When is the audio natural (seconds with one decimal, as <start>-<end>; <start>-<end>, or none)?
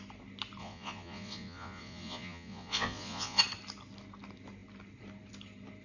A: 0.0-0.6; 3.4-5.8